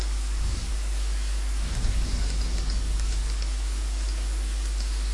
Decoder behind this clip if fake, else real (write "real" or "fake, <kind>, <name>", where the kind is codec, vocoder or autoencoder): fake, codec, DAC